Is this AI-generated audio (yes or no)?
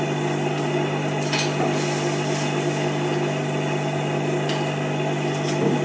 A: no